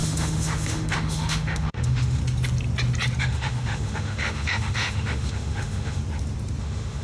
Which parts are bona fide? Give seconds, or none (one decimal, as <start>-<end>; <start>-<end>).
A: 2.2-3.2; 6.0-6.6